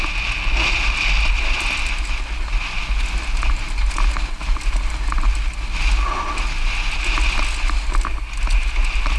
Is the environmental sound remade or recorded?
recorded